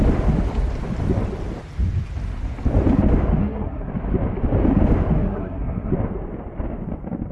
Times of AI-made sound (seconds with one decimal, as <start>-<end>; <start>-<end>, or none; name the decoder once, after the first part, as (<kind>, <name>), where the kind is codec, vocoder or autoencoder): 3.4-3.9 (codec, SNAC); 5.2-5.9